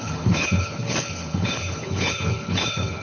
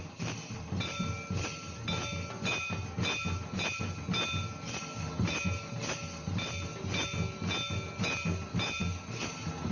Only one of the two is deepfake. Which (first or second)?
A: first